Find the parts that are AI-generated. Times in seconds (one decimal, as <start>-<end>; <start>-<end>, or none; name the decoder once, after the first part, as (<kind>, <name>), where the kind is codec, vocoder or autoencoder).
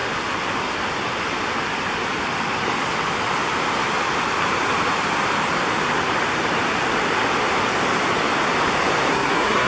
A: 9.1-9.7 (codec, SNAC)